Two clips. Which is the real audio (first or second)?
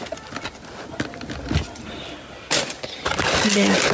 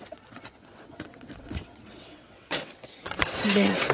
first